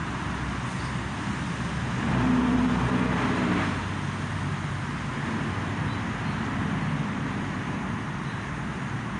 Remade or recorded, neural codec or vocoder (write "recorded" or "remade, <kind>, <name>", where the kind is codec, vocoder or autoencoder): recorded